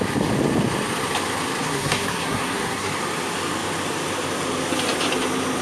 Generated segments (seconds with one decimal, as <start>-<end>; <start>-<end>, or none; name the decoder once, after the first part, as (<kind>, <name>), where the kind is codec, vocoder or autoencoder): 1.6-2.9 (codec, SNAC)